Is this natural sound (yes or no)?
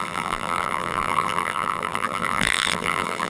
no